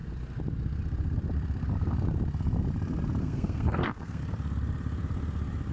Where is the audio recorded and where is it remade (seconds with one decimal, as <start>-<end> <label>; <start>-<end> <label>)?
0.0-3.2 recorded; 3.2-4.2 remade; 4.2-5.7 recorded